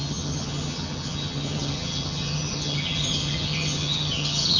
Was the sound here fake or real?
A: fake